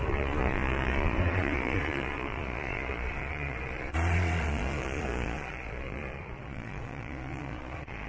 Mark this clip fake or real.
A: fake